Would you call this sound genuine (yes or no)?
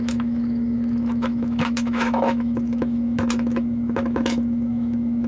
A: no